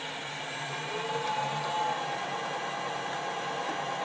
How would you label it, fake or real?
real